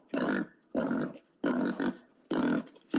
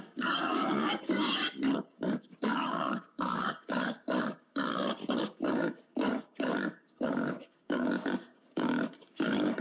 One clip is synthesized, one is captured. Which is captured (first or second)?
first